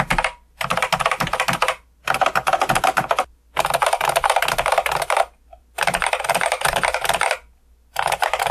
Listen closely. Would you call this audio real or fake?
real